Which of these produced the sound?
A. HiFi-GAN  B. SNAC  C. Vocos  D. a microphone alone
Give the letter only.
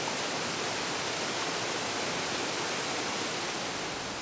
D